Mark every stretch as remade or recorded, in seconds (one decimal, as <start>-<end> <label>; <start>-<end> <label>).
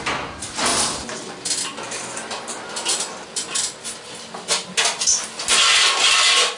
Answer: 0.0-6.6 recorded